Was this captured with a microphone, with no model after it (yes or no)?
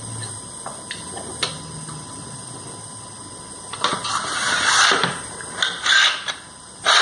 yes